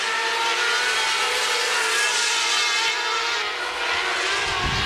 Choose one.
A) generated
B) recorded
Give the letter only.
B